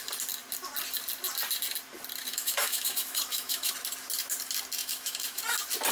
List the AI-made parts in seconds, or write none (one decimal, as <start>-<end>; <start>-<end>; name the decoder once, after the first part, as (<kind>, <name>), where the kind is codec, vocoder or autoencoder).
2.3-3.7 (autoencoder, DAC-VAE); 4.8-5.4